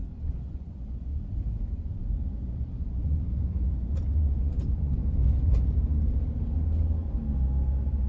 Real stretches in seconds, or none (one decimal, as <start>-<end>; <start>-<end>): 1.1-1.6; 5.0-8.1